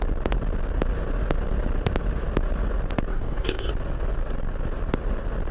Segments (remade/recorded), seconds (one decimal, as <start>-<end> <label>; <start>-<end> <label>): 0.0-3.1 recorded; 3.1-3.7 remade; 3.7-5.5 recorded